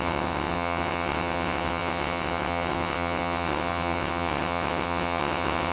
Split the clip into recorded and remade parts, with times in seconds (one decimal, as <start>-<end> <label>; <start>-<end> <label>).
0.0-5.7 remade